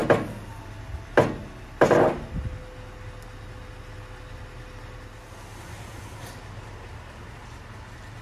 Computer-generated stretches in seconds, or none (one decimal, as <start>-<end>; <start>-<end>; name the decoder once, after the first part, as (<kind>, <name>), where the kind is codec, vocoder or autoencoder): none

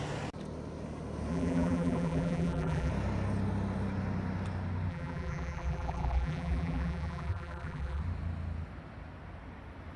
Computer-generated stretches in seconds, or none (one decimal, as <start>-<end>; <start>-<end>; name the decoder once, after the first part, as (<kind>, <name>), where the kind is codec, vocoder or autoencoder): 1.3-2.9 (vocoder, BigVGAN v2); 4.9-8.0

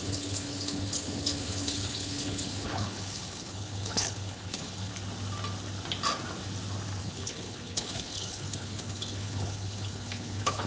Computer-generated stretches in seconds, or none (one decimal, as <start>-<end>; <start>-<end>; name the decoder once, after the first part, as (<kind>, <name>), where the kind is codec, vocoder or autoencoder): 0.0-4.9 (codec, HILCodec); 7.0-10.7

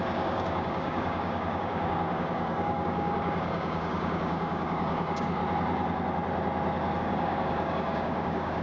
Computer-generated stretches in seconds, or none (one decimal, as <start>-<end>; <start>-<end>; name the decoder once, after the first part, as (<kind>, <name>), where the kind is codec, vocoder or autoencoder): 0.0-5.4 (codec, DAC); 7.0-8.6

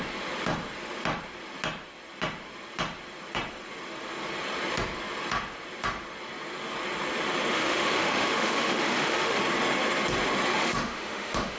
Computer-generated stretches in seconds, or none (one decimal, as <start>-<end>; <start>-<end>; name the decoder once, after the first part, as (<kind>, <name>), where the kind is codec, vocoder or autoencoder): 7.5-9.4 (autoencoder, DAC-VAE); 10.6-11.6

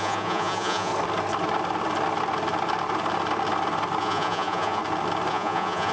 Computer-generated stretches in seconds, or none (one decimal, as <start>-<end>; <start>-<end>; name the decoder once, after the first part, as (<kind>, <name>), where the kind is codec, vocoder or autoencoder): 0.0-0.9 (vocoder, Vocos); 4.0-4.8; 5.3-5.9

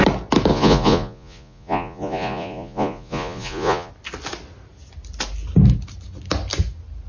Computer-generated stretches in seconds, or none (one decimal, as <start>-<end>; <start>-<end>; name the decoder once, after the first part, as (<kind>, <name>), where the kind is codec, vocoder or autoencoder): 0.5-3.9 (vocoder, Vocos)